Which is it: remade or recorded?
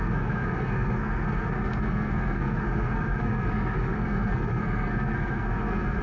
remade